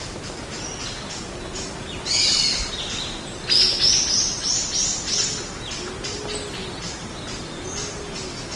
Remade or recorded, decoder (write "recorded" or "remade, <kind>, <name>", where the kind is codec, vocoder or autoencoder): recorded